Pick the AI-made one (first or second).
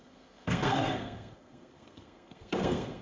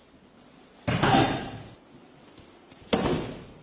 first